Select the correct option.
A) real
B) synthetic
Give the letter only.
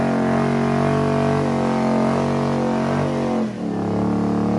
A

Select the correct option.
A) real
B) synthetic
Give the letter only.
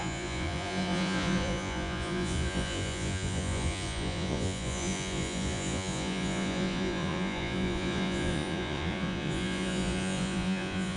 B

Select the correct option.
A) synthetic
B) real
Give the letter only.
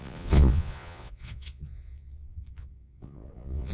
A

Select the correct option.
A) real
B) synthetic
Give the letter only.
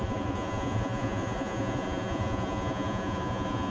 B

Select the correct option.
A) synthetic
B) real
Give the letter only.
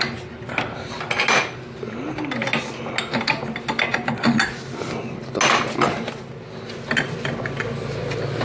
B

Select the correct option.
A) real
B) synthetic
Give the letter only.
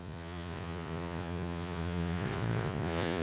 B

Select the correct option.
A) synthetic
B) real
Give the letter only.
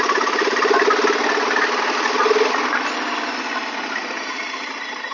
B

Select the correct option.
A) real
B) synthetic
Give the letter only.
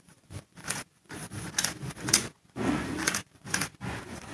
B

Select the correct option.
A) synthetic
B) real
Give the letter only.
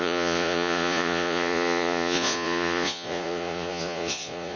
A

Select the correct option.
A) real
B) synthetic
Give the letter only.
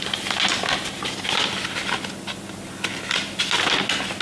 A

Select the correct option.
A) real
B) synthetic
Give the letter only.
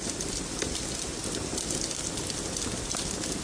A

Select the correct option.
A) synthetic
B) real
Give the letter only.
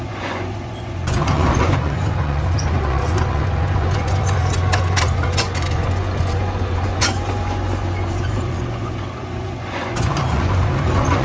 A